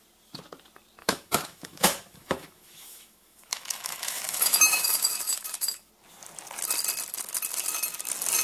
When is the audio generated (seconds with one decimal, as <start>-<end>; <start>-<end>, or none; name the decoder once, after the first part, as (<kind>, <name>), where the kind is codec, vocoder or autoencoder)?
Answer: 1.0-5.9 (autoencoder, DAC-VAE)